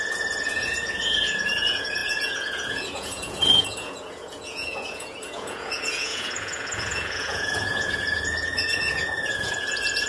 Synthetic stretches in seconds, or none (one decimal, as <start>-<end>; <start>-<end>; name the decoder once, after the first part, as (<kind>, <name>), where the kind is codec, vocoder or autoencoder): 0.0-10.1 (vocoder, Vocos)